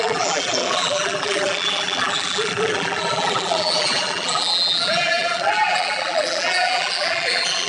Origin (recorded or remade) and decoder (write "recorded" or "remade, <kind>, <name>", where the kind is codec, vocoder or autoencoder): remade, vocoder, BigVGAN v2